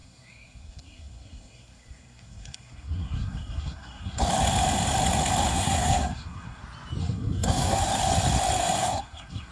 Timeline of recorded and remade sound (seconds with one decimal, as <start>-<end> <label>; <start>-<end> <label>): 0.0-4.2 remade; 4.2-5.5 recorded; 5.5-6.6 remade; 6.6-7.0 recorded; 7.0-7.8 remade; 7.8-8.8 recorded; 8.8-9.5 remade